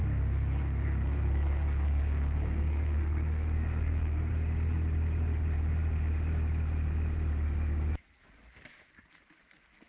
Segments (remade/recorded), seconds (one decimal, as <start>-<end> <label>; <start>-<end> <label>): 0.0-4.3 remade; 4.3-9.9 recorded